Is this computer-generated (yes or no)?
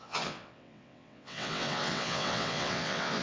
yes